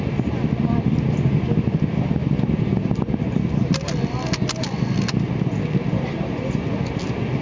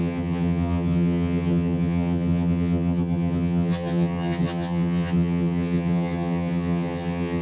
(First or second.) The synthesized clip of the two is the second